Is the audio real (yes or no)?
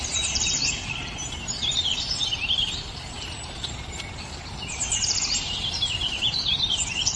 no